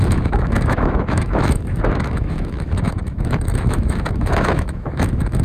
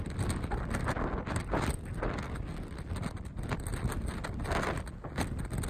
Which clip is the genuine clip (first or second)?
second